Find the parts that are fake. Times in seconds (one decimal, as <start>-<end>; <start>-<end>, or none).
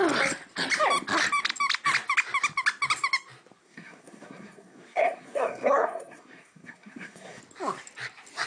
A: 3.6-7.4